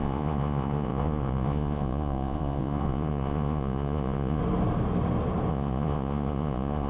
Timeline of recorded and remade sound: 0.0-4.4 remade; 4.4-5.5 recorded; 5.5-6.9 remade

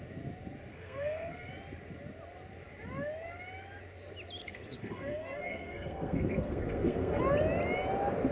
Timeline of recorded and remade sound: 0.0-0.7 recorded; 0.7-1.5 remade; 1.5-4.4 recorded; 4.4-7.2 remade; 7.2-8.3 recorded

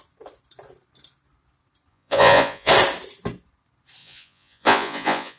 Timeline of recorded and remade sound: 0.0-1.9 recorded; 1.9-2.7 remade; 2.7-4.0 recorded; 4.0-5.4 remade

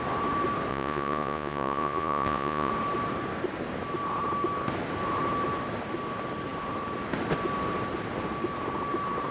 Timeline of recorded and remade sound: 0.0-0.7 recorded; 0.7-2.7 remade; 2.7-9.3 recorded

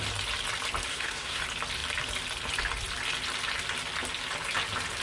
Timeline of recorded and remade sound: 0.0-0.9 recorded; 0.9-1.4 remade; 1.4-5.0 recorded

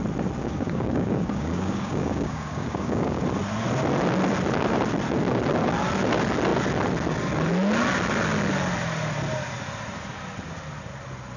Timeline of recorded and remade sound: 0.0-0.4 recorded; 0.4-3.2 remade; 3.2-11.4 recorded

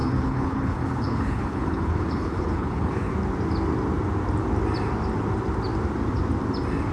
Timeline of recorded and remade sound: 0.0-3.1 remade; 3.1-6.9 recorded